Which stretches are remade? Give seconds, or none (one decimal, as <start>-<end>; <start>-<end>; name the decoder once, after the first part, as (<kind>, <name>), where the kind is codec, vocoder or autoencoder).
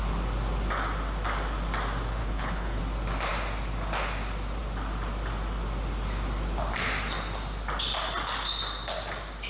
2.2-2.8 (codec, HILCodec)